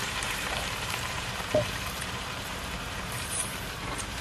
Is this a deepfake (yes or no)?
yes